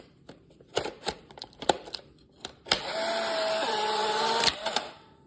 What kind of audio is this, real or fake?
fake